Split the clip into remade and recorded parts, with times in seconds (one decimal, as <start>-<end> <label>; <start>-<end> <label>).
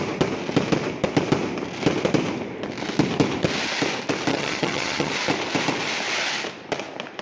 0.0-4.3 recorded; 4.3-5.1 remade; 5.1-7.2 recorded